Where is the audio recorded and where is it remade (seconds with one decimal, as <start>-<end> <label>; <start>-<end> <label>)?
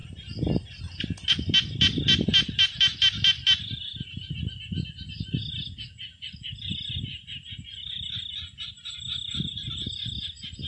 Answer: 0.0-10.7 recorded